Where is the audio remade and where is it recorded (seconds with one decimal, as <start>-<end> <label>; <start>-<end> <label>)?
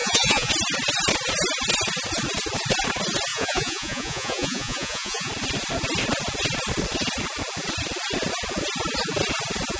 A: 0.0-0.5 remade; 0.5-3.3 recorded; 3.3-5.3 remade; 5.3-9.8 recorded